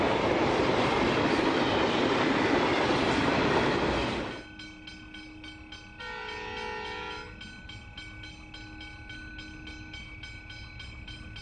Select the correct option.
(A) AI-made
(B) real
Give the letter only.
B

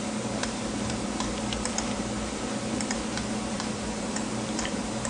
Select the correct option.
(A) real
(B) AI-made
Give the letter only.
B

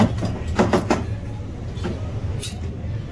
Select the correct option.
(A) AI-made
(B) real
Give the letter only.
B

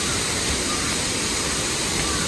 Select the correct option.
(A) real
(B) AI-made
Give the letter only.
A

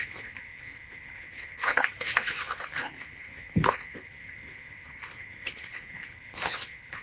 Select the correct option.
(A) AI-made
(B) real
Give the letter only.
A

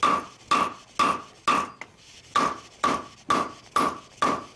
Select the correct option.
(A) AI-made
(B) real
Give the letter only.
B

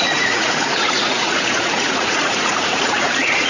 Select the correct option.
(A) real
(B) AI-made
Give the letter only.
B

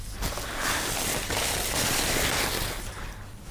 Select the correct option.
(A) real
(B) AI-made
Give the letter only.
B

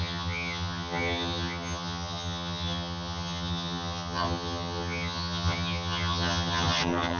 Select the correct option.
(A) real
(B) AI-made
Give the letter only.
B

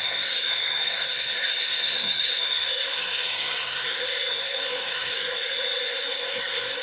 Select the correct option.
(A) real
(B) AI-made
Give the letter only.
B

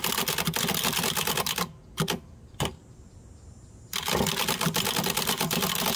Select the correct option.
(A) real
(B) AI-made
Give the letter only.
A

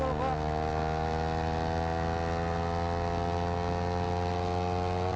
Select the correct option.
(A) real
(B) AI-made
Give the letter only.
A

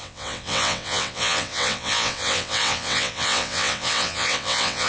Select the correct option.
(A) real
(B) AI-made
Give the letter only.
B